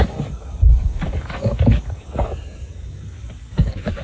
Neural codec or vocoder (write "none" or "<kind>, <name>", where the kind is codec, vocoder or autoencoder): codec, DAC